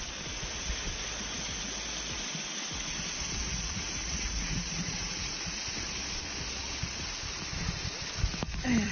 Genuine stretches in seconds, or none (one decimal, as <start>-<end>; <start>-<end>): 0.0-3.5; 5.7-8.9